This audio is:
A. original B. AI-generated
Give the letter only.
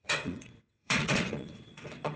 B